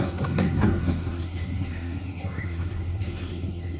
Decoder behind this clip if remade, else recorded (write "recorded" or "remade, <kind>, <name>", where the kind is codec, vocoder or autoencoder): remade, codec, SNAC